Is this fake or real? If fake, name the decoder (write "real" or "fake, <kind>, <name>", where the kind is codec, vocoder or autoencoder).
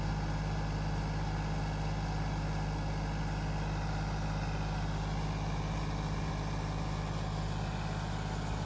real